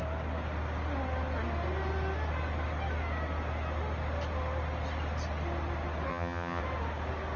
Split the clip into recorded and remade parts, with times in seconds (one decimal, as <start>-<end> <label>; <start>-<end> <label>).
0.0-6.1 recorded; 6.1-6.6 remade; 6.6-7.4 recorded